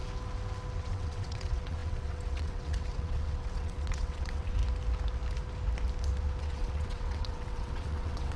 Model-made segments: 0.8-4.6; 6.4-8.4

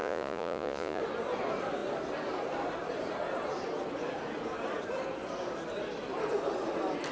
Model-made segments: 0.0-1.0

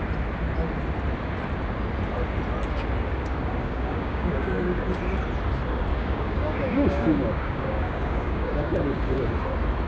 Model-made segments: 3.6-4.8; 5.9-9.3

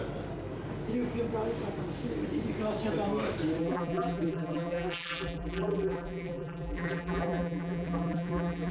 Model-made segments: 3.6-8.7

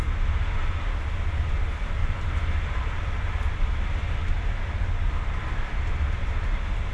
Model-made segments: 2.0-3.5; 6.2-6.9

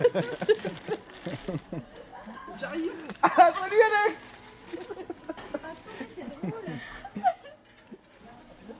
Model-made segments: none

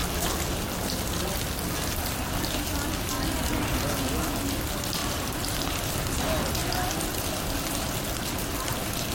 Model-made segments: 5.0-5.9

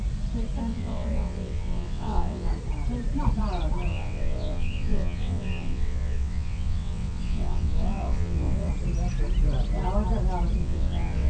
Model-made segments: 0.7-2.5; 3.9-8.7; 10.6-11.3